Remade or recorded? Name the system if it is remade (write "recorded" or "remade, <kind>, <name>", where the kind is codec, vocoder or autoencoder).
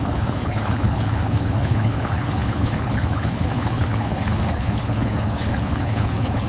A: remade, codec, HILCodec